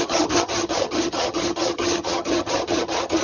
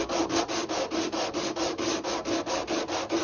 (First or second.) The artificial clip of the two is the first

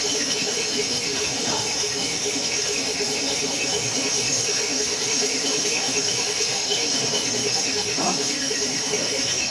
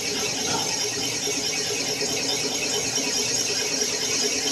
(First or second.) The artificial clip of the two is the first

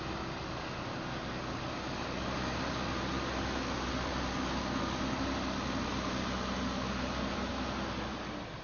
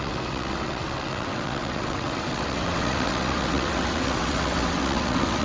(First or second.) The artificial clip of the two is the second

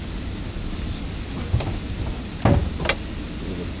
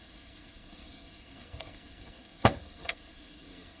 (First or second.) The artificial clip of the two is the second